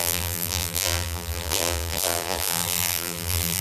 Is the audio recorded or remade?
remade